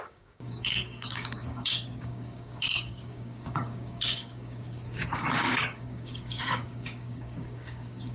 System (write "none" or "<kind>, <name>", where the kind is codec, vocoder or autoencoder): codec, DAC